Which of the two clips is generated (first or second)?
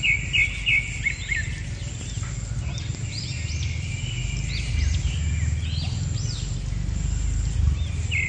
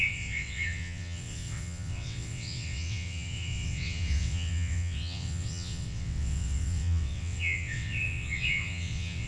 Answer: second